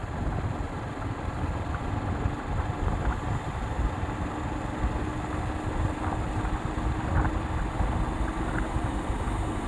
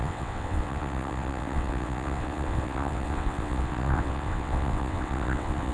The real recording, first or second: first